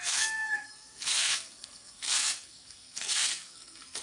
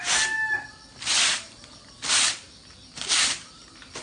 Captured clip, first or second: second